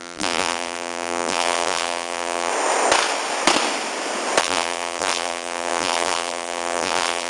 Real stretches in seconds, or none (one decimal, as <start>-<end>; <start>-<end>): 2.5-4.4